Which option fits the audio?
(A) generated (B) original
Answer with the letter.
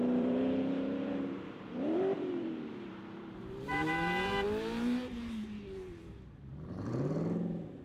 A